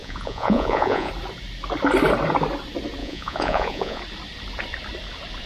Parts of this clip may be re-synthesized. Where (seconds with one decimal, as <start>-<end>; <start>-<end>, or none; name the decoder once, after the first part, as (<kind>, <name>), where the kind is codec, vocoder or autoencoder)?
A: 0.0-1.1 (vocoder, Vocos); 3.0-4.0